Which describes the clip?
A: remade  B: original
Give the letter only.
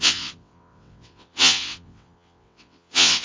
A